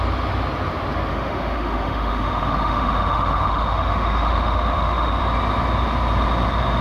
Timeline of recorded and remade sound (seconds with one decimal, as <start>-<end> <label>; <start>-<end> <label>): 0.0-1.1 recorded; 1.1-5.2 remade; 5.2-6.8 recorded